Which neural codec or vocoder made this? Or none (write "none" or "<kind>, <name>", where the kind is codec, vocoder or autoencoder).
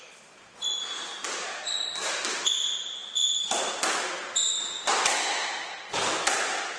none